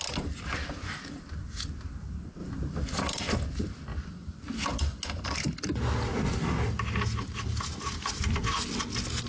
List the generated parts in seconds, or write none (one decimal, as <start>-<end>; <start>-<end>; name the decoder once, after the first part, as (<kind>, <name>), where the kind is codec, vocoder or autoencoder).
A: none